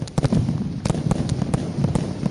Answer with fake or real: real